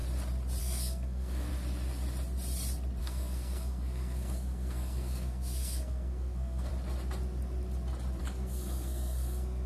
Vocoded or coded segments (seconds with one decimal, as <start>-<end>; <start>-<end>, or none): 0.6-1.5; 3.0-6.7; 8.2-9.7